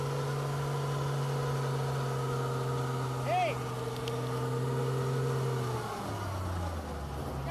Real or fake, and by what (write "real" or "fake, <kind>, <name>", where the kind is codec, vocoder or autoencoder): real